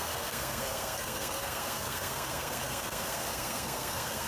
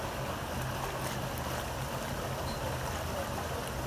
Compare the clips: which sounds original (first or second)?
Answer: second